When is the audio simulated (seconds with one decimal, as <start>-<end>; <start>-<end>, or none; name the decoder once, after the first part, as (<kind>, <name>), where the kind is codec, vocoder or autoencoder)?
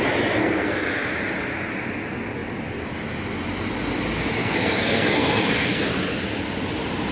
0.4-0.9 (codec, SNAC); 4.4-5.8